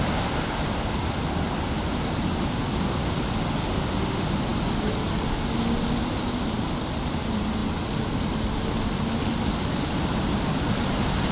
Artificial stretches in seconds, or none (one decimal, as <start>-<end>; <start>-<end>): none